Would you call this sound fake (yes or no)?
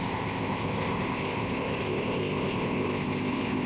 yes